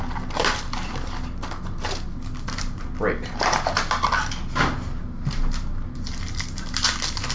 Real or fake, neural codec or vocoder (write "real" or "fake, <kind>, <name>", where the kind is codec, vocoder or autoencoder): real